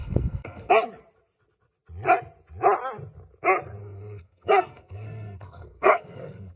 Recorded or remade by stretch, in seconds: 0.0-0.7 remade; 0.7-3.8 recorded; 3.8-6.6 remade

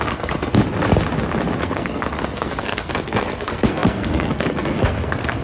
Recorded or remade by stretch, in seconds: 0.0-0.6 remade; 0.6-1.6 recorded; 1.6-5.4 remade

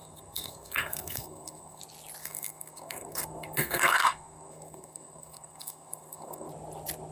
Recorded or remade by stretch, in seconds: 0.0-1.8 remade; 1.8-2.2 recorded; 2.2-6.5 remade; 6.5-7.1 recorded

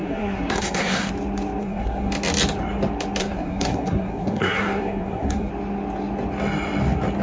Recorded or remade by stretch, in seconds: 0.0-1.1 remade; 1.1-1.6 recorded; 1.6-2.1 remade; 2.1-3.2 recorded; 3.2-5.5 remade; 5.5-7.2 recorded

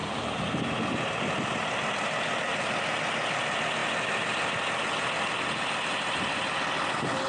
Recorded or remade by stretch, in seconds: 0.0-7.3 recorded

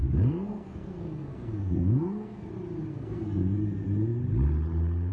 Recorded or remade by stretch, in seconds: 0.0-2.5 remade; 2.5-2.9 recorded; 2.9-3.6 remade; 3.6-5.1 recorded

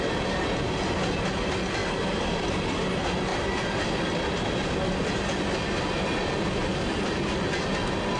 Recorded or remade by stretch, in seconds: 0.0-8.2 recorded